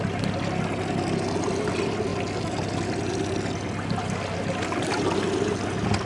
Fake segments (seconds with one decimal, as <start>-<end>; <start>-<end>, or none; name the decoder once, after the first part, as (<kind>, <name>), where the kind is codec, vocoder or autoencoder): none